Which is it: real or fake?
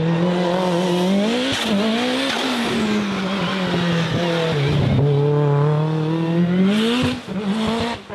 real